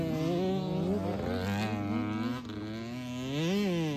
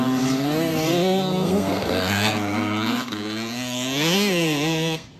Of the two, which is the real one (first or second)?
first